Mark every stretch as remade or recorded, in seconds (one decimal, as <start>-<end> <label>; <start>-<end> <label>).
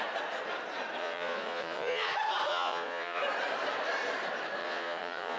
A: 0.0-1.0 recorded; 1.0-2.1 remade; 2.1-2.5 recorded; 2.5-3.2 remade; 3.2-4.6 recorded; 4.6-5.4 remade